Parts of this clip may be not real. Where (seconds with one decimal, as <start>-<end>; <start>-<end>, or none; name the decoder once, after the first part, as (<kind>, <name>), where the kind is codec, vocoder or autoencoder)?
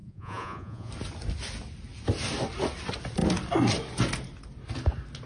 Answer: 0.0-0.9 (vocoder, Vocos)